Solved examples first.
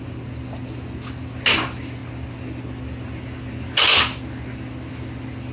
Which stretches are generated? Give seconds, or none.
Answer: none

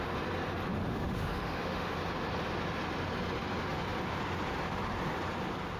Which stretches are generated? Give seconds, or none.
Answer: 0.8-2.0 (autoencoder, DAC-VAE)

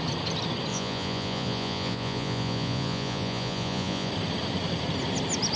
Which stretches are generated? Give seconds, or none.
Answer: 0.7-4.1 (vocoder, Vocos)

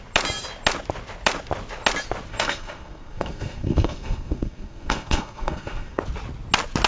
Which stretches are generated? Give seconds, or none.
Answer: 2.3-6.0 (codec, SNAC)

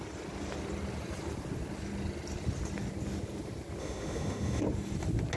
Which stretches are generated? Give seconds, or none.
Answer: 3.8-4.6 (autoencoder, DAC-VAE)